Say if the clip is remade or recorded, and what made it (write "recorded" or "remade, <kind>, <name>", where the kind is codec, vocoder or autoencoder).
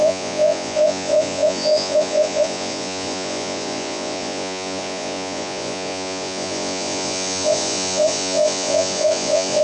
remade, vocoder, Vocos